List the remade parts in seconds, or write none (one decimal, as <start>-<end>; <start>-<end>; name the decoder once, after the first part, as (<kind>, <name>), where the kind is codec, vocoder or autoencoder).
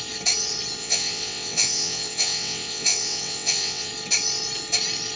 0.8-3.9 (vocoder, WaveNeXt)